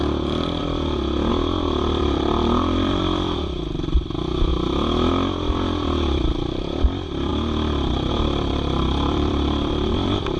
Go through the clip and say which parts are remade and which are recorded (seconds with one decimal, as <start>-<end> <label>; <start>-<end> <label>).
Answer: 0.0-4.5 remade; 4.5-5.1 recorded; 5.1-7.3 remade; 7.3-8.1 recorded; 8.1-10.4 remade